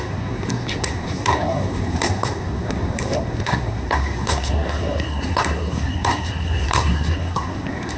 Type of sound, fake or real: fake